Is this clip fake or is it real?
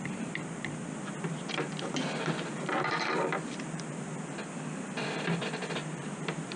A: fake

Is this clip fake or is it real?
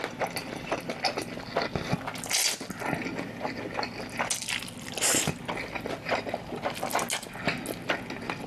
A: real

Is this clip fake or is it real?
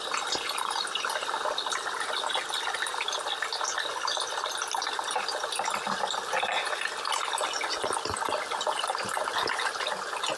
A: real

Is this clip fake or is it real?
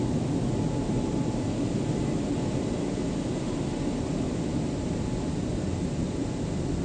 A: real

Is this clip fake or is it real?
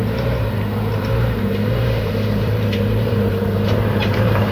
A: fake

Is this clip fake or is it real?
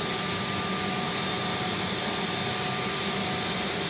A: real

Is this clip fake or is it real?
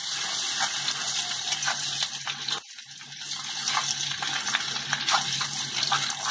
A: real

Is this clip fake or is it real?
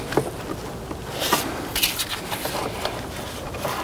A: real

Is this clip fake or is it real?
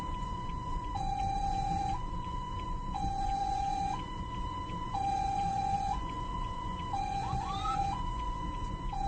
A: fake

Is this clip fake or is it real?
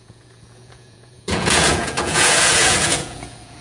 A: fake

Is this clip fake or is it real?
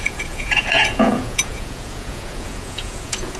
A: fake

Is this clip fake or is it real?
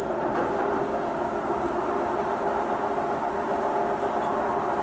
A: real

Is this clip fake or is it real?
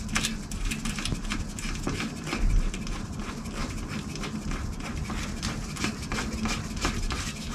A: real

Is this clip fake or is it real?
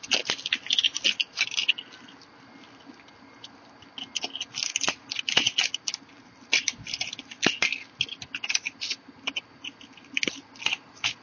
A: real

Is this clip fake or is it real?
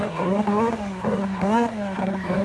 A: fake